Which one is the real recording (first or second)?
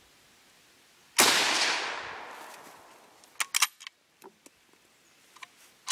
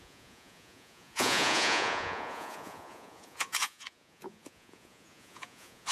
first